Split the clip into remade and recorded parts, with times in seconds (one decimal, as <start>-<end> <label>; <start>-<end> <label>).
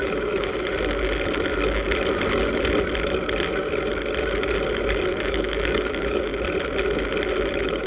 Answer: 0.0-0.5 remade; 0.5-5.1 recorded; 5.1-6.3 remade; 6.3-7.5 recorded; 7.5-7.9 remade